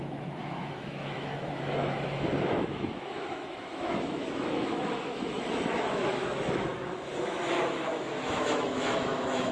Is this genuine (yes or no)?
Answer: no